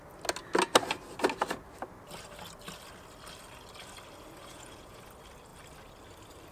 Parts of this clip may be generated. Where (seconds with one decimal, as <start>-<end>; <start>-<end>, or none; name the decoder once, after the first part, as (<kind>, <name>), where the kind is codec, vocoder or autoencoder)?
4.4-5.0 (vocoder, Vocos)